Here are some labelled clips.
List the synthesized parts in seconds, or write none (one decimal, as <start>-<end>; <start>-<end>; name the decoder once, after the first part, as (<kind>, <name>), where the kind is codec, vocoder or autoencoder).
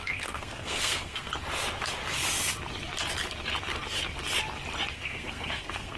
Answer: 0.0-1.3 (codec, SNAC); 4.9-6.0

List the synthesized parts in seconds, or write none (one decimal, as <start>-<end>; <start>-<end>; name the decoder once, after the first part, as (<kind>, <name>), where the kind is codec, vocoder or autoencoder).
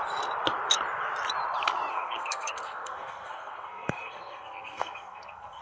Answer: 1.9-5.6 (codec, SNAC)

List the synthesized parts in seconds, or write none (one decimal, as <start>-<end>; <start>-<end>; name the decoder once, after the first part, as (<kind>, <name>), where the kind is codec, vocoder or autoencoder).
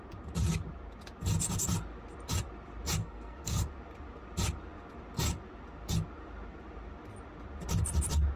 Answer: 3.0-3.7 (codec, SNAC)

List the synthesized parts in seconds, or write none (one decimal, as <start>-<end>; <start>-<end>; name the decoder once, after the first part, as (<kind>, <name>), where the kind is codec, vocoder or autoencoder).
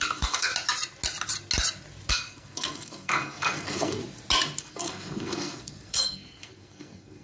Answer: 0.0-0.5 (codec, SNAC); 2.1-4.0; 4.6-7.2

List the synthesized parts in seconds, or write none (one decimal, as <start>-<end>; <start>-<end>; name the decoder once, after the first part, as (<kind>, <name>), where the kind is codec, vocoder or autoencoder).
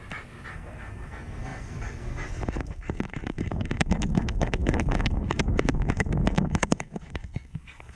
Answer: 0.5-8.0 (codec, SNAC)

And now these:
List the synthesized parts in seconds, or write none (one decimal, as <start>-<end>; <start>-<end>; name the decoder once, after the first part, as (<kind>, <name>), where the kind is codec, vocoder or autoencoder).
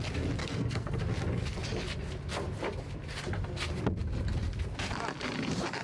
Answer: 0.4-1.0 (codec, SNAC)